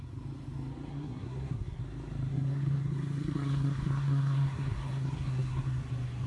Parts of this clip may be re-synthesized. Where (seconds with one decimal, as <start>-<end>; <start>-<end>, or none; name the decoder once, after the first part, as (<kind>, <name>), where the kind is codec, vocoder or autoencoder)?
0.9-1.8 (codec, SNAC); 2.3-5.8